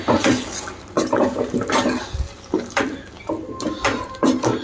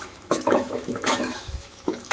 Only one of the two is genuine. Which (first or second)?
first